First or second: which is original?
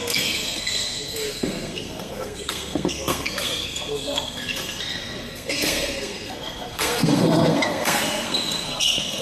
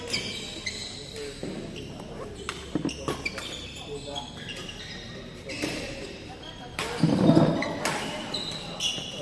second